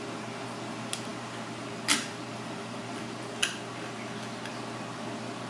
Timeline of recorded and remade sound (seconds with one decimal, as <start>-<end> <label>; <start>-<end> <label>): 0.0-5.5 recorded